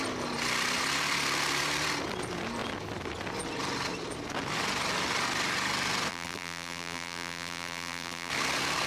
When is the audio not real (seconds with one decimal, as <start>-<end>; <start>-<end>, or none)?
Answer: 6.1-8.3